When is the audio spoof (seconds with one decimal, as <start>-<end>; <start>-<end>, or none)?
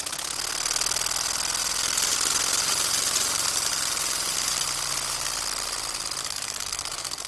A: 6.2-7.3